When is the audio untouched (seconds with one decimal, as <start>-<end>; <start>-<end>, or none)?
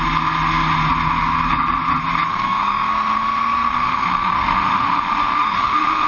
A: 0.0-2.3